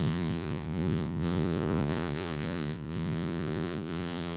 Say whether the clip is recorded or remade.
remade